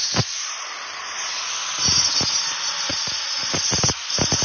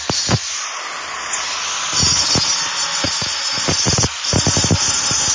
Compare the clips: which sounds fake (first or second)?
first